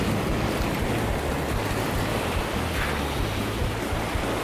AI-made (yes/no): no